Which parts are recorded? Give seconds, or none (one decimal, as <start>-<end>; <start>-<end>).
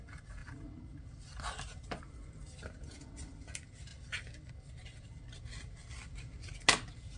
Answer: 0.0-7.2